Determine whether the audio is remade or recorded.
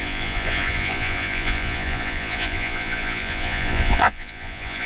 remade